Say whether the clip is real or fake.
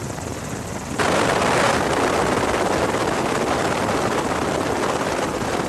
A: real